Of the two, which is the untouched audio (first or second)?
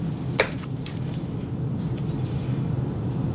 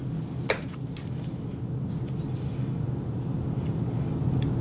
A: second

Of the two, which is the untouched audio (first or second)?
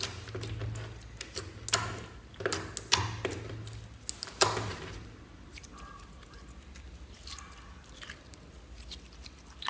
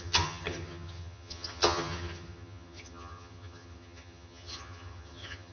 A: first